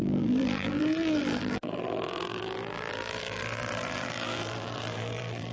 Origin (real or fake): fake